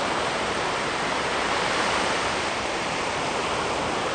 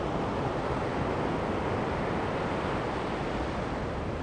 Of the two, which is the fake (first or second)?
first